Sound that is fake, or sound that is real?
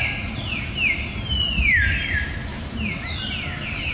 real